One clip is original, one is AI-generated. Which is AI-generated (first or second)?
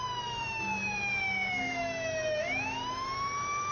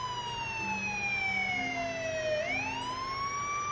first